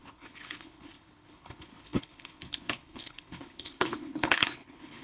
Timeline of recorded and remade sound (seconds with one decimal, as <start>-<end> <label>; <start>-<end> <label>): 0.0-5.0 remade